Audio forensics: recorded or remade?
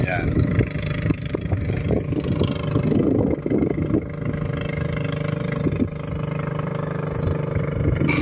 recorded